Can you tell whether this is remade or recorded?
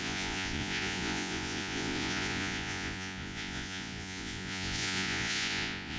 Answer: remade